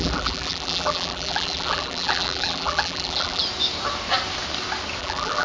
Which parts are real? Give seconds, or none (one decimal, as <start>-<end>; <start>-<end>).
3.4-5.0